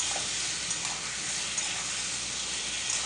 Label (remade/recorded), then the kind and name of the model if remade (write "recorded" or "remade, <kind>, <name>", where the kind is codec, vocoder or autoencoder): recorded